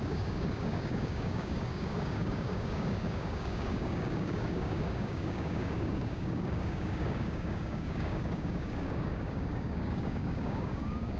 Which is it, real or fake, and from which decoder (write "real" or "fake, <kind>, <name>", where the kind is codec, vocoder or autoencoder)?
fake, codec, DAC